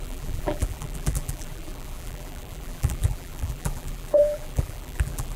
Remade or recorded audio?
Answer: remade